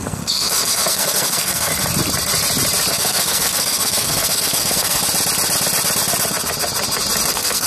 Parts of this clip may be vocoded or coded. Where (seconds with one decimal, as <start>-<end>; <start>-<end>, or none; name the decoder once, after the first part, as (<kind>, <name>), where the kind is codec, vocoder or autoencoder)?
0.0-1.7 (codec, SNAC); 2.9-5.0; 7.3-7.7

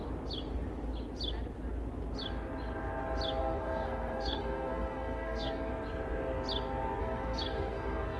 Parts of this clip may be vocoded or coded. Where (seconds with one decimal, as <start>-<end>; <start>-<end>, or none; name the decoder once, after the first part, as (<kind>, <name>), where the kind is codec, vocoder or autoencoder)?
3.4-5.7 (codec, SNAC); 7.0-8.2

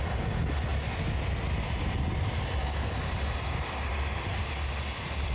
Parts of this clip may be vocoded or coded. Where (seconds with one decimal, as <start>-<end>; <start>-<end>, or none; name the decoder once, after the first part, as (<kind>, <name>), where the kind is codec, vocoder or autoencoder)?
none

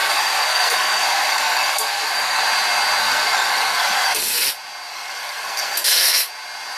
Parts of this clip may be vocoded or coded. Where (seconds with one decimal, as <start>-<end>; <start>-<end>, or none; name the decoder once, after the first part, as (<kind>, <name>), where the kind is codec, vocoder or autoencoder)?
0.0-2.4 (codec, SNAC); 3.0-4.5; 4.9-6.3

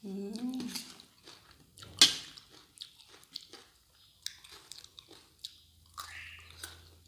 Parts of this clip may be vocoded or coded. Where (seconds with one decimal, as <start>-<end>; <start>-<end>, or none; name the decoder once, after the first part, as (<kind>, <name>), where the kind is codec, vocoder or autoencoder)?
none